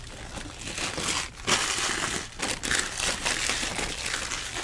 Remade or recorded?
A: recorded